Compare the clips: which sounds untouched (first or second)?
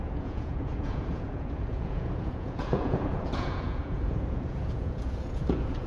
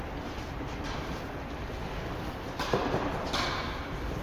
second